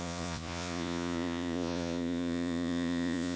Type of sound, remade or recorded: remade